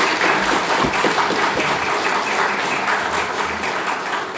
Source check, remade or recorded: recorded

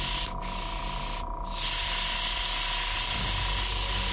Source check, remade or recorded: recorded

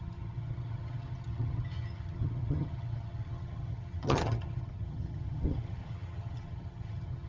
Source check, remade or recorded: remade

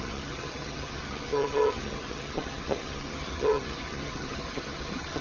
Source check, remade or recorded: remade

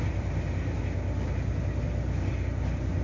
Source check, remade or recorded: recorded